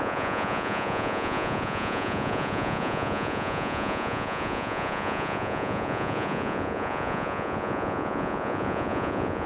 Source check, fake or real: fake